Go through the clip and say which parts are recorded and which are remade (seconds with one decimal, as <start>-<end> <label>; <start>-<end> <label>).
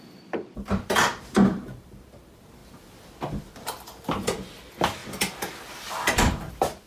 0.0-6.9 remade